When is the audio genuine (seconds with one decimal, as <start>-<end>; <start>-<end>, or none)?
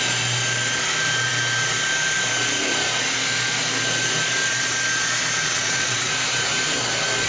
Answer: 0.0-5.4; 6.1-7.3